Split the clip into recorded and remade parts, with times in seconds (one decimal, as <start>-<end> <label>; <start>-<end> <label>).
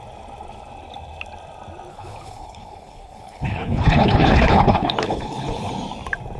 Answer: 0.0-1.9 recorded; 1.9-5.7 remade; 5.7-6.4 recorded